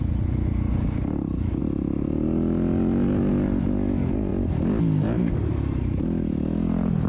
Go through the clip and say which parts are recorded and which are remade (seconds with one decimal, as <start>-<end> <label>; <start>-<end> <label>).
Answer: 0.0-7.1 recorded

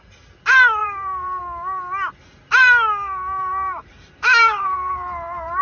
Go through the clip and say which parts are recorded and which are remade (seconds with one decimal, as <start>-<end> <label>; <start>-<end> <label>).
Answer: 0.0-0.8 recorded; 0.8-1.4 remade; 1.4-3.4 recorded; 3.4-5.6 remade

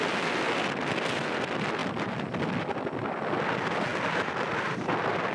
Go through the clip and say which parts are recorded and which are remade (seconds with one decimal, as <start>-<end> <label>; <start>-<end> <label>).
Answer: 0.0-5.3 recorded

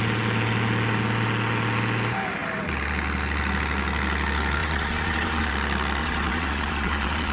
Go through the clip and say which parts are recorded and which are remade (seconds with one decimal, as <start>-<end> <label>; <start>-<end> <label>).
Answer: 0.0-4.6 recorded; 4.6-5.5 remade; 5.5-6.0 recorded; 6.0-7.3 remade

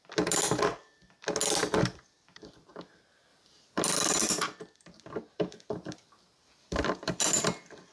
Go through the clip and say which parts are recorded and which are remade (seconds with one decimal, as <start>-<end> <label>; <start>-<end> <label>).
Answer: 0.0-1.6 recorded; 1.6-2.7 remade; 2.7-3.3 recorded; 3.3-3.8 remade; 3.8-4.2 recorded; 4.2-7.2 remade; 7.2-7.9 recorded

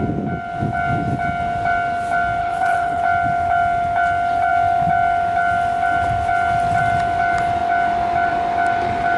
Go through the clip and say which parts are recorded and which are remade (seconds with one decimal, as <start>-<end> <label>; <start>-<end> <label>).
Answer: 0.0-2.4 recorded; 2.4-3.0 remade; 3.0-9.2 recorded

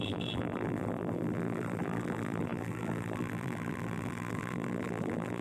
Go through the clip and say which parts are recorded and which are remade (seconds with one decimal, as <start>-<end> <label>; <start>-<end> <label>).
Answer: 0.0-5.4 remade